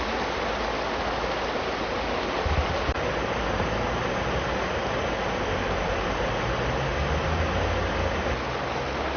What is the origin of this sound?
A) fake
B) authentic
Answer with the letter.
B